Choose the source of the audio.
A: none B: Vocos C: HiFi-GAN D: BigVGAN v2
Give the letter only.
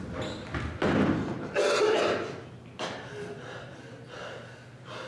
A